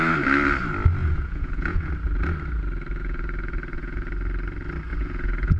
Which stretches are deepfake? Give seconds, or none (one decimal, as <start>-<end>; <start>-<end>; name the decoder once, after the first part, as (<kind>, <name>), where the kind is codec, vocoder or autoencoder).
1.0-1.9 (vocoder, Vocos); 3.0-4.1; 4.9-5.6